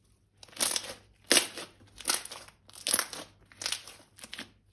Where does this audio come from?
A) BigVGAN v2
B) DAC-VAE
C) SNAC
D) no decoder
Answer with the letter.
D